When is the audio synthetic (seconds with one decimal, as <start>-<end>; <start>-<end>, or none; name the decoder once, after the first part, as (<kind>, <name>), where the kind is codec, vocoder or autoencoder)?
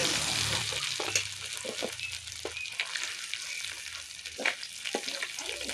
0.0-0.7 (vocoder, BigVGAN v2); 1.8-3.6